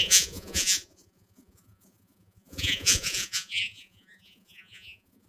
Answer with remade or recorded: remade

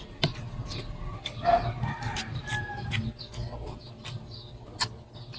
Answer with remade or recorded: recorded